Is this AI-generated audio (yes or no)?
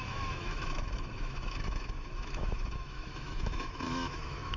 yes